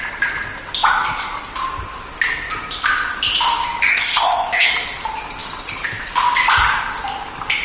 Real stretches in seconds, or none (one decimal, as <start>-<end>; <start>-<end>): 0.0-3.9; 4.7-7.6